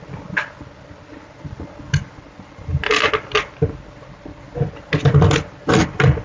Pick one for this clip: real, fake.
real